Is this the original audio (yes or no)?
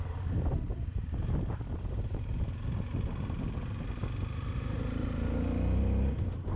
yes